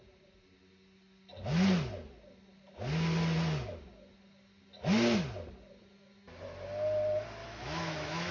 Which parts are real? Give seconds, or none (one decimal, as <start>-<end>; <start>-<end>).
0.0-7.4